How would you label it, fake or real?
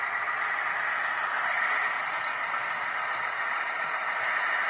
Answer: real